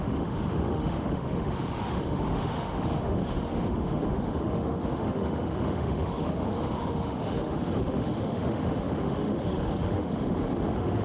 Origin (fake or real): fake